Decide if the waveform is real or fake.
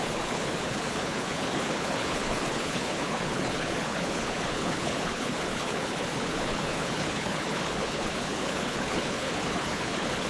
fake